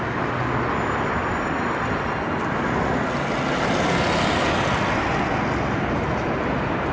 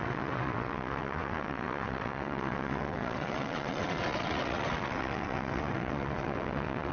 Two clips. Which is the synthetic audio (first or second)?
second